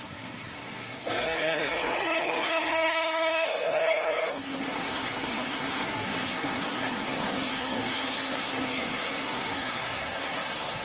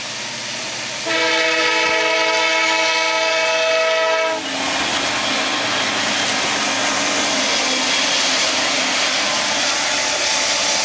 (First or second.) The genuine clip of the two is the second